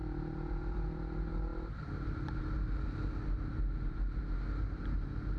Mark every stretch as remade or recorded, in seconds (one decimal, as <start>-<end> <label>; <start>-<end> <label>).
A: 0.0-0.9 remade; 0.9-5.4 recorded